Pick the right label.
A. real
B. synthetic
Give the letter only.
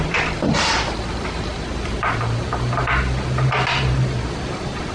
B